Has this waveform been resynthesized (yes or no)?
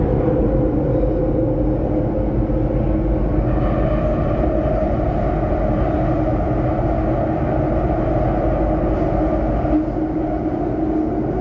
no